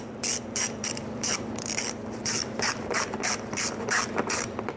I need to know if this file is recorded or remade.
remade